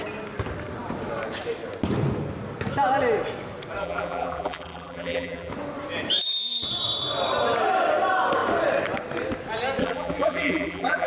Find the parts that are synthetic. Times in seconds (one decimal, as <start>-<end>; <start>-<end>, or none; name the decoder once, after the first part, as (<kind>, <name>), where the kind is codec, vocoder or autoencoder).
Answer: 3.8-5.5 (vocoder, BigVGAN v2); 9.8-11.1